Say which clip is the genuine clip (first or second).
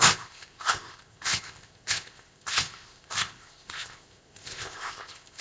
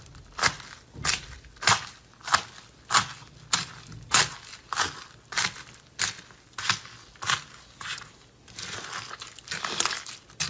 second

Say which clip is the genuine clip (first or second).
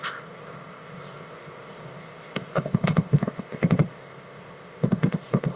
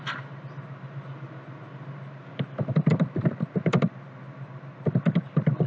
second